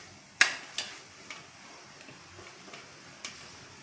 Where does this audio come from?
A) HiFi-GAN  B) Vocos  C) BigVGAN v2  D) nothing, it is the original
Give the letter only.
D